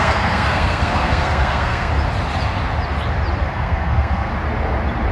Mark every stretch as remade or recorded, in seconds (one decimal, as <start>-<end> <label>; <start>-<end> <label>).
0.0-1.9 remade; 1.9-3.4 recorded; 3.4-4.3 remade; 4.3-5.1 recorded